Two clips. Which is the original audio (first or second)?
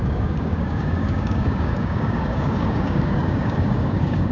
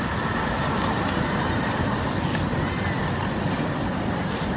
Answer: second